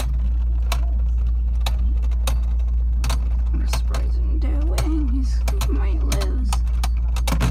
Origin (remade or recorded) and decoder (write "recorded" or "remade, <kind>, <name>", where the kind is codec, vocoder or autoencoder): recorded